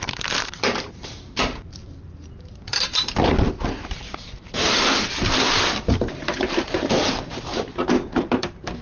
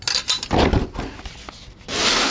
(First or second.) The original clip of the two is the second